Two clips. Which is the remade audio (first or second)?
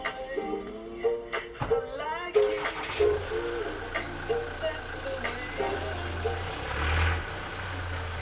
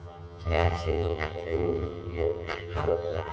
second